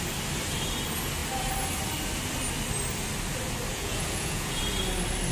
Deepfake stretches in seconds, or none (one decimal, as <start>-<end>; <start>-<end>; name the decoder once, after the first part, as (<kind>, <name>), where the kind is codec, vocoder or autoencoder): 3.7-4.6 (vocoder, Vocos)